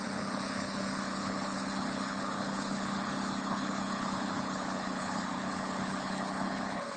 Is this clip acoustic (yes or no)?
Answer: no